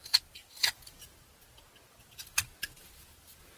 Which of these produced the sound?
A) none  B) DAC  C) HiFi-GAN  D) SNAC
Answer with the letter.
A